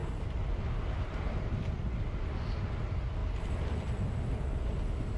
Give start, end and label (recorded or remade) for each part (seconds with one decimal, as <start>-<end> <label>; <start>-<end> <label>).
0.0-2.3 remade; 2.3-5.2 recorded